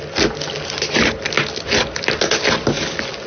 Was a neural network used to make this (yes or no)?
no